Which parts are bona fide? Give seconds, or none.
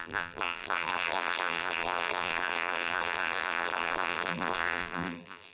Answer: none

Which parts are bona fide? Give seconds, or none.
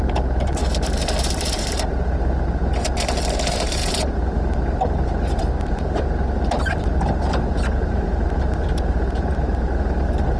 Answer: 0.6-1.3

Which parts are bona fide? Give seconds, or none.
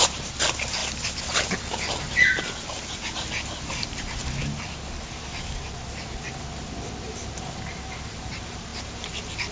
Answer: 0.8-2.4; 4.2-7.0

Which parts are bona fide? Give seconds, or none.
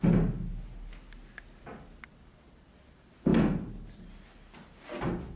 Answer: 0.0-5.4